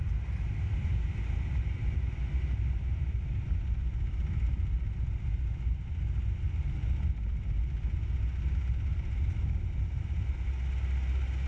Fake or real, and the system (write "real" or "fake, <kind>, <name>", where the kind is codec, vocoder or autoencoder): real